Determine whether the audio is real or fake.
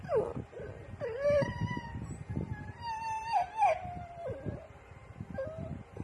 real